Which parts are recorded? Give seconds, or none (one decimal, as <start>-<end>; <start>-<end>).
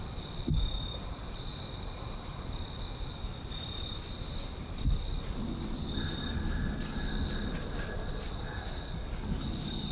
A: 0.0-9.9